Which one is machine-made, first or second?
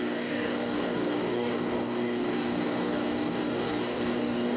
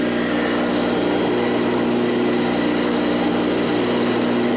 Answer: first